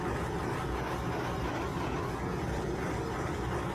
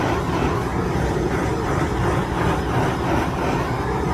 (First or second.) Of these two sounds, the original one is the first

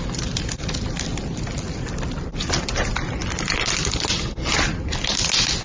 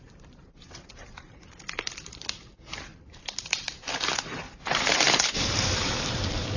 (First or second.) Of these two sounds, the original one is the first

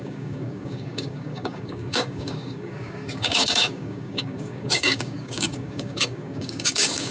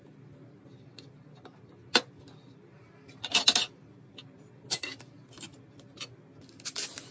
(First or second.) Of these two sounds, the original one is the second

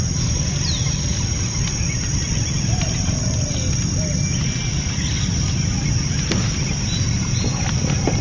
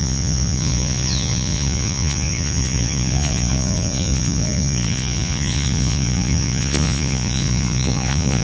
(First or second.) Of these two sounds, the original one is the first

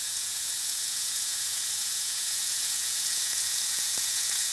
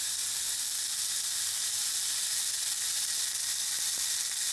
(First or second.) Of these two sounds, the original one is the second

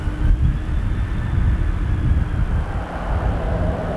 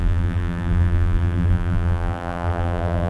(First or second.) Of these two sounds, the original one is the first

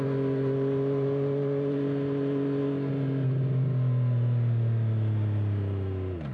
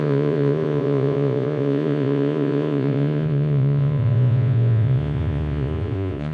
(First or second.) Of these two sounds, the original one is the first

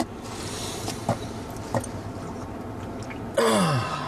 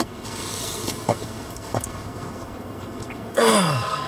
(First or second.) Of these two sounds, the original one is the first